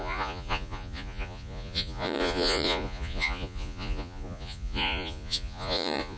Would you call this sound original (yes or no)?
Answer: no